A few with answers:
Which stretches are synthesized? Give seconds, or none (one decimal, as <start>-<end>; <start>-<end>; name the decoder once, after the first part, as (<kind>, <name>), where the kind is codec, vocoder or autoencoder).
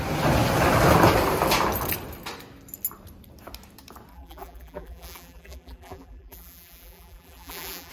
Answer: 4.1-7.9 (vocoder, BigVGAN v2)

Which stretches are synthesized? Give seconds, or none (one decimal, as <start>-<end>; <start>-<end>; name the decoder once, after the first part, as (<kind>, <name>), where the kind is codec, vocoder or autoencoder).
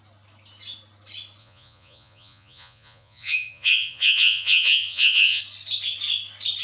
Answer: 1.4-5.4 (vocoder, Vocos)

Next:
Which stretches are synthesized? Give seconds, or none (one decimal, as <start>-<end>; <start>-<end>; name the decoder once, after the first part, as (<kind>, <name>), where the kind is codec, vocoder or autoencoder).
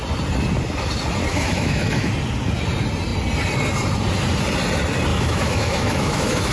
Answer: 1.3-2.1 (autoencoder, DAC-VAE); 5.1-6.5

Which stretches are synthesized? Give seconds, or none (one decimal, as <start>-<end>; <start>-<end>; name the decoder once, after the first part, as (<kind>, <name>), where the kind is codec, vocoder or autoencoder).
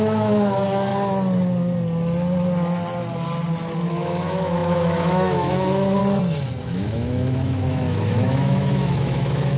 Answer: 0.0-0.9 (autoencoder, DAC-VAE); 3.9-6.0; 6.6-9.6